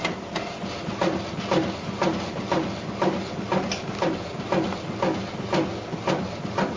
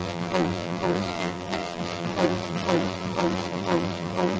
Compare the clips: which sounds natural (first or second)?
first